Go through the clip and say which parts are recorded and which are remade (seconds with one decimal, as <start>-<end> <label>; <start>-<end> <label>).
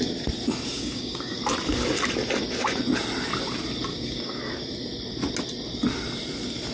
0.0-0.7 recorded; 0.7-1.4 remade; 1.4-3.9 recorded; 3.9-4.4 remade; 4.4-6.7 recorded